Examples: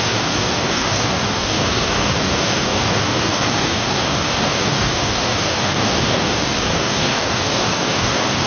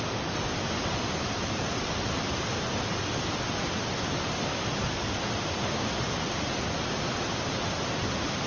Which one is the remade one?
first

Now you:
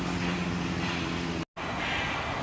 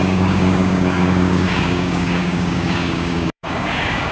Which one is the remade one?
second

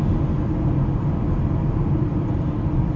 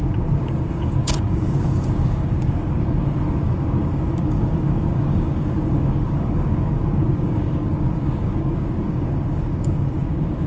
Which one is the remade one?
second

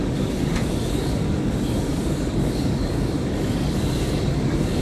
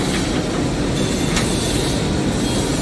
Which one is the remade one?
first